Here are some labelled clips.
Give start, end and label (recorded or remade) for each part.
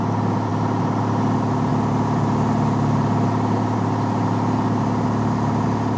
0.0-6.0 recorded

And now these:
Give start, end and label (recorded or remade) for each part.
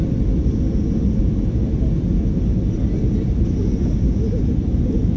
0.0-0.5 remade; 0.5-1.2 recorded; 1.2-1.6 remade; 1.6-4.7 recorded; 4.7-5.2 remade